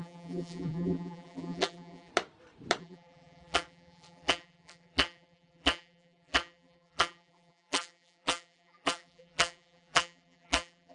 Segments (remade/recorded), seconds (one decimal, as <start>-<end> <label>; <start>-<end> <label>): 0.0-2.1 remade; 2.1-2.8 recorded; 2.8-10.9 remade